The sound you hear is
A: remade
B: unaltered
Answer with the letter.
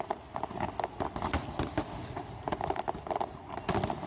B